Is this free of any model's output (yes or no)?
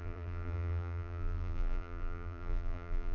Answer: no